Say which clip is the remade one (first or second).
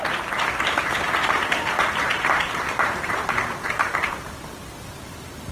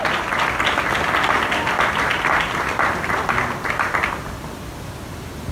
first